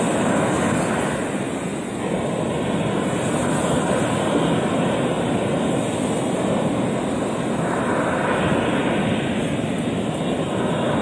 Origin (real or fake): real